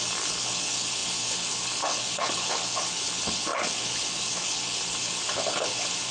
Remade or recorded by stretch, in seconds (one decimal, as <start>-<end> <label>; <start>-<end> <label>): 0.0-6.1 remade